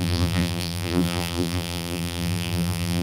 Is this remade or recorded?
remade